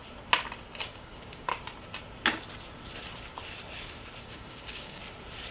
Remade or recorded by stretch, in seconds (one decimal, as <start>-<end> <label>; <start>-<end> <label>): 0.0-0.8 recorded; 0.8-1.5 remade; 1.5-4.2 recorded; 4.2-5.0 remade; 5.0-5.5 recorded